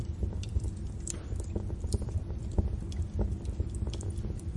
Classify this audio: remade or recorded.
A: recorded